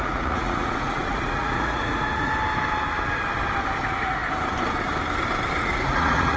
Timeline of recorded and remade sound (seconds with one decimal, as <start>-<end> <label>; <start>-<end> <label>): 0.0-2.3 remade; 2.3-3.8 recorded; 3.8-4.2 remade; 4.2-5.6 recorded; 5.6-6.4 remade